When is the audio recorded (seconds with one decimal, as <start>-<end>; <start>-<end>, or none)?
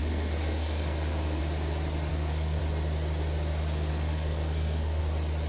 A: 1.4-2.1; 2.6-3.9; 5.0-5.5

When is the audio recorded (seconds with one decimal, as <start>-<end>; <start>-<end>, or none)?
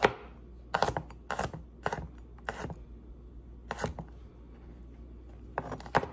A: 0.0-6.1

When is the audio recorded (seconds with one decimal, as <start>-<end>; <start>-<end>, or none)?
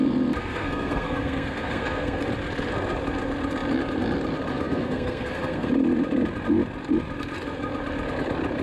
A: 0.0-0.4; 2.2-4.5; 5.7-8.6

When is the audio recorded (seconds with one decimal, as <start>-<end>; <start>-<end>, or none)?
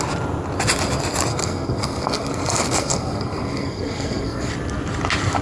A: 0.0-1.3; 4.5-5.4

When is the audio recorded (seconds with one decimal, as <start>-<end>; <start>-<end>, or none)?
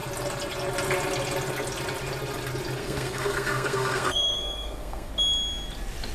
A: 0.0-2.8; 5.1-6.1